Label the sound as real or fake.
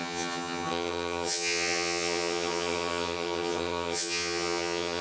fake